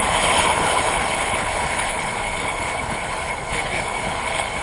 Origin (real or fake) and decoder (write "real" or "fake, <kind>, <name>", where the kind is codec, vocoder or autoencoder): fake, codec, HILCodec